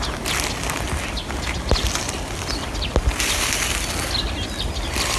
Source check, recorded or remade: recorded